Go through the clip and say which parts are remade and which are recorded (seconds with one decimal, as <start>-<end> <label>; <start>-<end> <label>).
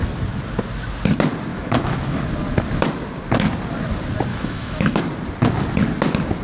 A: 0.0-1.5 recorded; 1.5-2.2 remade; 2.2-4.3 recorded; 4.3-5.0 remade; 5.0-6.4 recorded